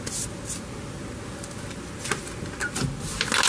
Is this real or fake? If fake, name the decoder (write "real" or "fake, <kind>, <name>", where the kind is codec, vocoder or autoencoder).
real